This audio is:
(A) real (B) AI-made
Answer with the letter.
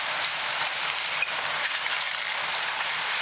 A